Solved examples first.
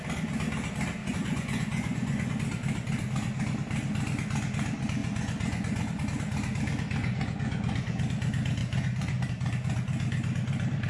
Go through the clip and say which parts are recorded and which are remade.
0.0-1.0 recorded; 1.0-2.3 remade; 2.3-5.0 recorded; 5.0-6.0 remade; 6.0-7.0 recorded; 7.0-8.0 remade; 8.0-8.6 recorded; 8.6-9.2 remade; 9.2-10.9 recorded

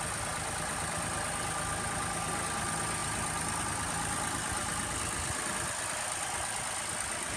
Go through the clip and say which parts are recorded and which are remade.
0.0-7.4 recorded

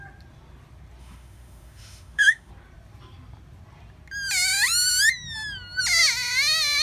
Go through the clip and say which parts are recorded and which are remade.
0.0-1.0 recorded; 1.0-2.5 remade; 2.5-6.8 recorded

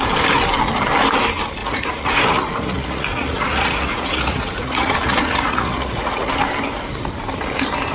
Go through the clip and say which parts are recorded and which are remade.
0.0-1.6 recorded; 1.6-6.3 remade; 6.3-7.9 recorded

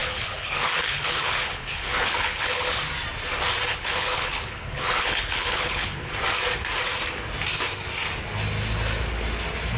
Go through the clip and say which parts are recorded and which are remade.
0.0-2.8 remade; 2.8-3.7 recorded; 3.7-6.1 remade; 6.1-9.8 recorded